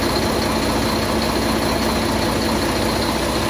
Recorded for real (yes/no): yes